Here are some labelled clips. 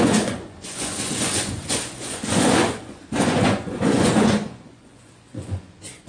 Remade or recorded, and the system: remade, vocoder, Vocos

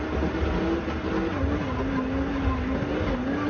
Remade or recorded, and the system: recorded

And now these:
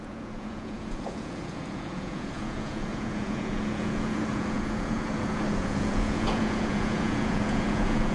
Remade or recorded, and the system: remade, vocoder, Vocos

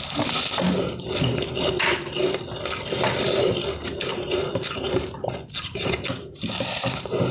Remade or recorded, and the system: recorded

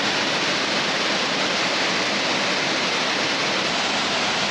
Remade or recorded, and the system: recorded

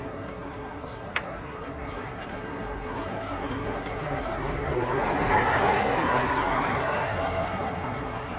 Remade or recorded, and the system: remade, codec, SNAC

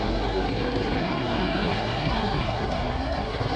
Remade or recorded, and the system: remade, codec, SNAC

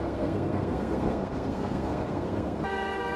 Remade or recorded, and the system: remade, codec, SNAC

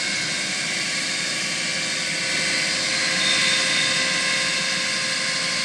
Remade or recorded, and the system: recorded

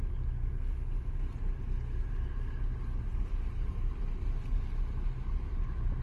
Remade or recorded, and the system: recorded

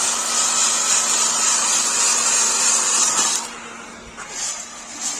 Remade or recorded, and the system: recorded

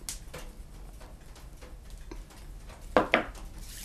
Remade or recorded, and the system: recorded